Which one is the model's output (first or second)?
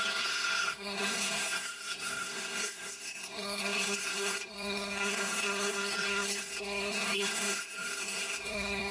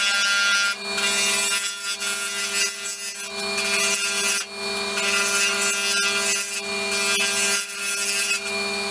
first